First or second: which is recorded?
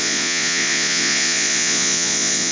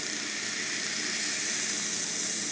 second